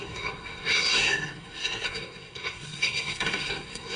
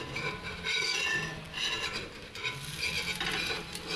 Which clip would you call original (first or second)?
second